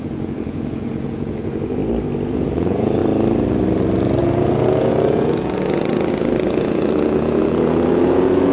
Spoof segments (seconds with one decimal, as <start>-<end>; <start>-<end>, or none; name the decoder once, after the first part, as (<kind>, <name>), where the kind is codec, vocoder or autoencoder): 0.0-1.8 (vocoder, Vocos); 2.3-3.0; 4.2-8.5